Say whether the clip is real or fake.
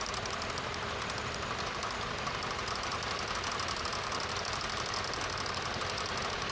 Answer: real